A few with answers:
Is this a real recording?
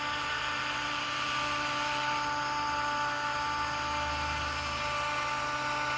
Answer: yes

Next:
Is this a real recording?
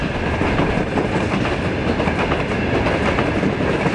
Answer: yes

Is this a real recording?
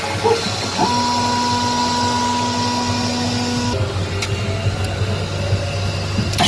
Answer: yes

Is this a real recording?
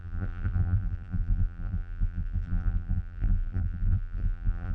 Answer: no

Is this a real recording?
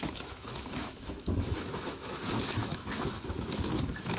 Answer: no